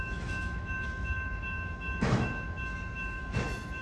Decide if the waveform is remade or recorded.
remade